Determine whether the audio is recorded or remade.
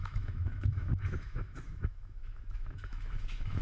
remade